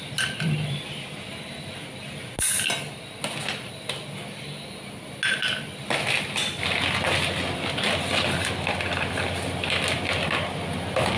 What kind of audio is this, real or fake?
real